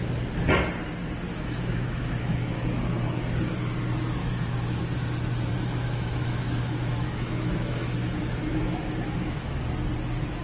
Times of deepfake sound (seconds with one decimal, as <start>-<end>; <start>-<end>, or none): 1.3-2.8; 4.2-4.8; 5.5-9.6